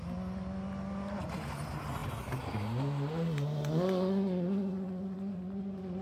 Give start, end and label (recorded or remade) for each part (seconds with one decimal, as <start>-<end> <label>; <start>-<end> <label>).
0.0-6.0 recorded